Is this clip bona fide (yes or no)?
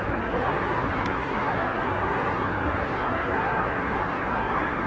no